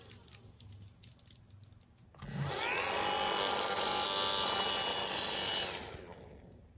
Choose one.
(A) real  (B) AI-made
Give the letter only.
A